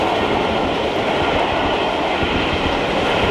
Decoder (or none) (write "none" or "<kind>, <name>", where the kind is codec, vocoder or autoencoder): none